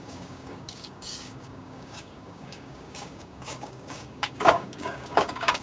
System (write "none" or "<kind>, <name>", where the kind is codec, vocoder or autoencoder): codec, DAC